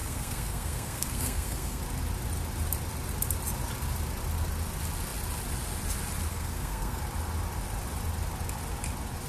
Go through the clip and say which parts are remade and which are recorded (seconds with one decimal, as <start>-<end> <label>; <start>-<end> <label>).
0.0-1.8 remade; 1.8-6.3 recorded; 6.3-7.0 remade; 7.0-9.3 recorded